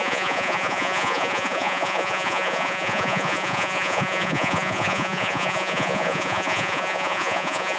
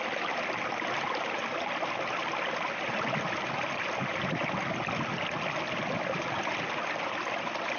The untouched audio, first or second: second